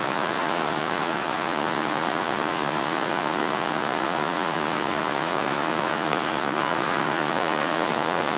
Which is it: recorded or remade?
remade